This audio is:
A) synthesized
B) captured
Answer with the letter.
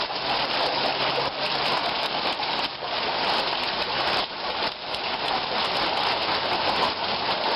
B